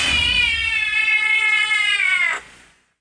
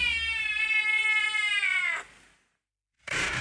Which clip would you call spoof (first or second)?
first